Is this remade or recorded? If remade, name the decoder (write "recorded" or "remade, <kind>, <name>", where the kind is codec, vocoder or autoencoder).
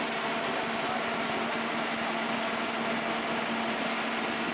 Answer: recorded